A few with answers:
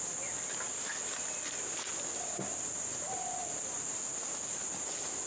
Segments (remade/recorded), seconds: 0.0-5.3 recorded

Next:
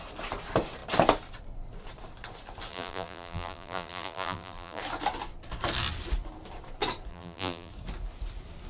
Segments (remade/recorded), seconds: 0.0-2.7 recorded; 2.7-4.8 remade; 4.8-7.1 recorded; 7.1-7.7 remade; 7.7-8.7 recorded

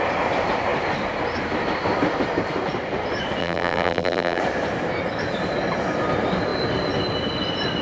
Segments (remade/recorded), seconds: 0.0-3.4 recorded; 3.4-4.4 remade; 4.4-7.8 recorded

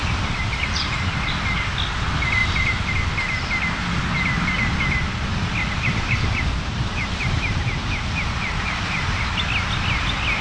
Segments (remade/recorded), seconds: 0.0-1.4 remade; 1.4-2.4 recorded; 2.4-2.9 remade; 2.9-5.6 recorded; 5.6-9.2 remade; 9.2-10.4 recorded